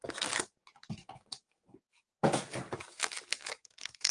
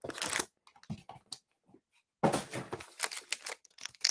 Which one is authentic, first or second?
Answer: second